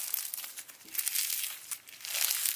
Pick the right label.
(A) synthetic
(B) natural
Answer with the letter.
B